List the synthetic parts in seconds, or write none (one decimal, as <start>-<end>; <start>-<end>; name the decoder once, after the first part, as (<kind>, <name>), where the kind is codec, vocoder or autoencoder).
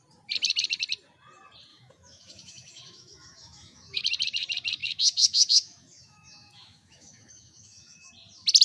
1.7-4.0 (autoencoder, DAC-VAE); 4.8-8.1